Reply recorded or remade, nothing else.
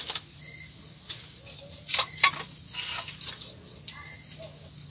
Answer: recorded